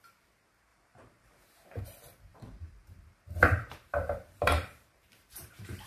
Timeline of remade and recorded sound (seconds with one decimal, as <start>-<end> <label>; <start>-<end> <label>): 0.0-0.7 recorded; 0.7-1.8 remade; 1.8-2.3 recorded; 2.3-5.9 remade